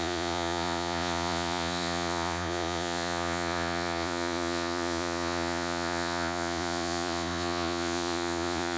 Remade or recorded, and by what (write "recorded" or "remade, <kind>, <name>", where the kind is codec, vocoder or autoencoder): remade, vocoder, Vocos